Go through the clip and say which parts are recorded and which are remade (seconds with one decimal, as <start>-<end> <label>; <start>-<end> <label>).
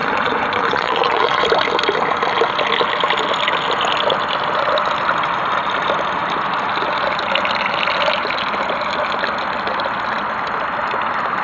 0.0-1.4 remade; 1.4-11.4 recorded